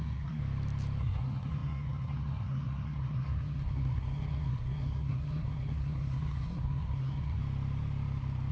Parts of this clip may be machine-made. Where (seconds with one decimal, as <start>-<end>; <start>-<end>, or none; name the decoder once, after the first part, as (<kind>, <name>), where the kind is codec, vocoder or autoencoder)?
0.0-0.4 (codec, SNAC); 1.0-7.4